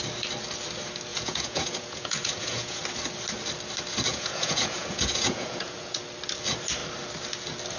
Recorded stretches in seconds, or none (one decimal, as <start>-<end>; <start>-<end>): 0.0-1.1; 2.8-4.1; 6.0-7.8